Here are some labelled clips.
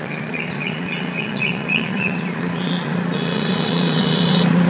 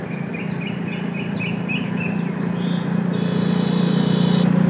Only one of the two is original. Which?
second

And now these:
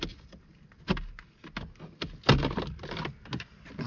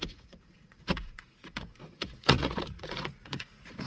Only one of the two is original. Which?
first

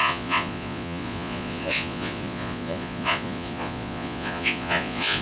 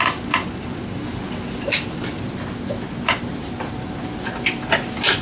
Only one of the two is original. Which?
second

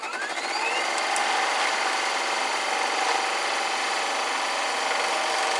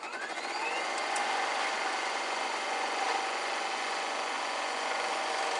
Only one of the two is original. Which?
first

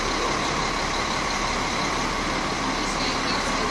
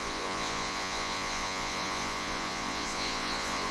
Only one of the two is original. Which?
first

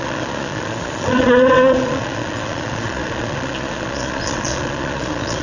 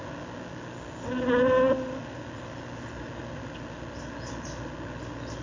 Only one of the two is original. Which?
second